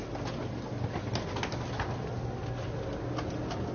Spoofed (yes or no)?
no